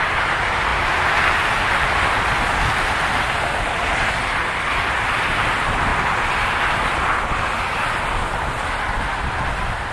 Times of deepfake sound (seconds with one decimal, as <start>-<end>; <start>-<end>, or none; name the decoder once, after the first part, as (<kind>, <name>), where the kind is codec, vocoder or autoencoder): none